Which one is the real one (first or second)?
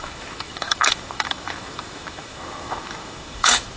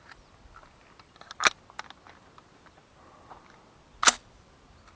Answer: second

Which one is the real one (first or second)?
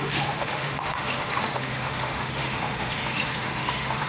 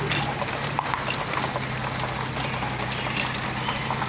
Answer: second